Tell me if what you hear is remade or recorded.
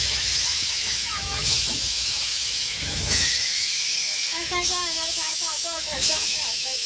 remade